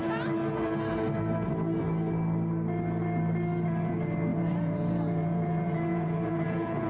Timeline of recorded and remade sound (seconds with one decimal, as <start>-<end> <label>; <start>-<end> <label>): 0.0-4.3 recorded; 4.3-6.9 remade